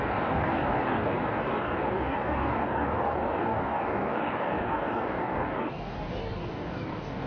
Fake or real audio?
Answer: fake